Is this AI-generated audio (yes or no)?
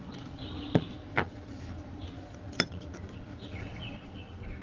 yes